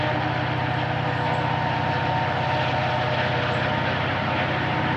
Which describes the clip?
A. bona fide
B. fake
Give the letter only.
A